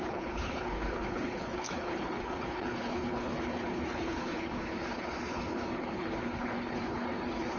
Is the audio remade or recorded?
remade